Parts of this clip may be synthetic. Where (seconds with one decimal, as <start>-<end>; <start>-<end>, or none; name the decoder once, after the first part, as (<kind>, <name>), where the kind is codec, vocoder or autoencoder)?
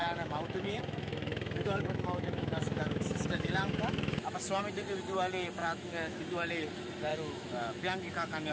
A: 0.0-4.6 (autoencoder, DAC-VAE); 5.6-6.2; 7.1-8.5